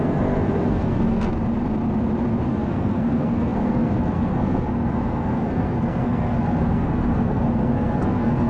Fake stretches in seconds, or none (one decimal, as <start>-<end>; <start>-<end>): 0.0-1.3; 2.5-8.5